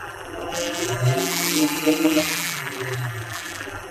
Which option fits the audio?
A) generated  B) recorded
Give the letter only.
A